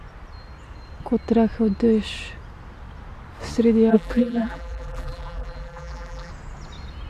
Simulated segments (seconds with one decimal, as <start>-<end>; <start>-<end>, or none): 3.9-6.3